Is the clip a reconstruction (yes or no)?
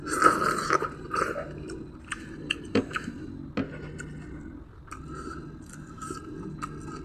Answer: no